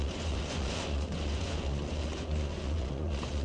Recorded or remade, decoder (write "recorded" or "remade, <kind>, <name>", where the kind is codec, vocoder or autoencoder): remade, vocoder, Vocos